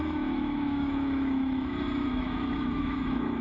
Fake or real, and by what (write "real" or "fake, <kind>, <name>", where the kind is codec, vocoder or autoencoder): fake, autoencoder, DAC-VAE